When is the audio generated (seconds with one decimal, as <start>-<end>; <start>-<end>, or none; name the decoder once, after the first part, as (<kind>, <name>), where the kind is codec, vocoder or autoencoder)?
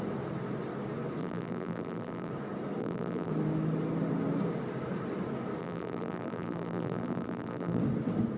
1.2-2.3 (vocoder, BigVGAN v2); 2.8-3.3; 5.6-7.8